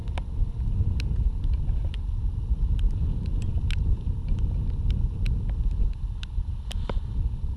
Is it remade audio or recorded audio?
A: recorded